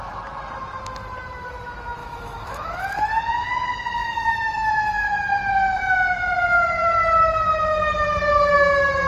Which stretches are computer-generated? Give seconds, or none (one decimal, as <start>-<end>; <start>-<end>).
2.0-2.8; 4.0-4.7